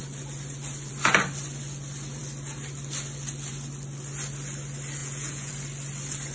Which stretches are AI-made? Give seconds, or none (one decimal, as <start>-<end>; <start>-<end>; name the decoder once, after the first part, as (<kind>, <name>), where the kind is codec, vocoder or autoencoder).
5.0-5.5 (vocoder, Vocos)